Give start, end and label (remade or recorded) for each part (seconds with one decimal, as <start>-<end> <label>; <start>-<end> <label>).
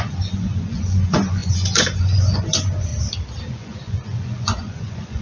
0.0-2.9 remade; 2.9-3.5 recorded; 3.5-5.2 remade